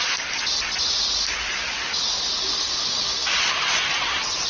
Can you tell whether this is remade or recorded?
recorded